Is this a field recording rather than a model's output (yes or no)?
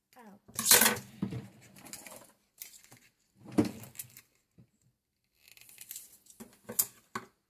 yes